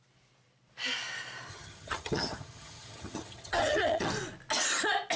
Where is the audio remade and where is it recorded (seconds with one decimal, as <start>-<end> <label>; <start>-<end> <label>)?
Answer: 0.0-1.5 recorded; 1.5-4.1 remade; 4.1-5.2 recorded